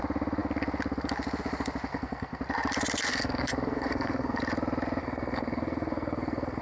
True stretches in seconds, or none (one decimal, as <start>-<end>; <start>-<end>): 0.0-1.9; 2.4-3.1; 4.4-5.0